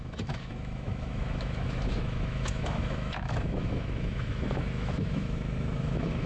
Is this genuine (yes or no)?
no